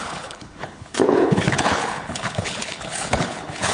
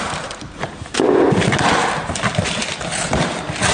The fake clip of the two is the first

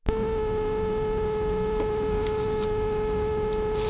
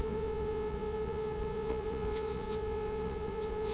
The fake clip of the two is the second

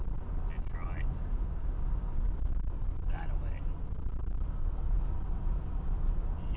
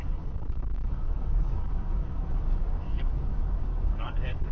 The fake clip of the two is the second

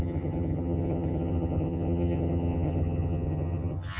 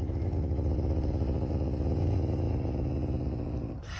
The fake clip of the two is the first